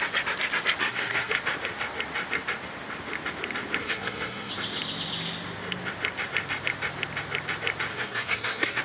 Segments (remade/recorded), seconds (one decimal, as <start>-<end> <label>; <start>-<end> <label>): 0.0-0.8 recorded; 0.8-1.3 remade; 1.3-3.8 recorded; 3.8-4.5 remade; 4.5-7.9 recorded; 7.9-8.8 remade